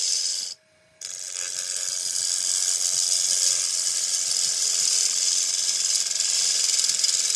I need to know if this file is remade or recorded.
remade